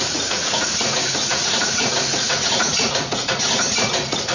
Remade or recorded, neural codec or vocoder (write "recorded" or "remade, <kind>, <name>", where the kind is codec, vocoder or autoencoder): remade, vocoder, Vocos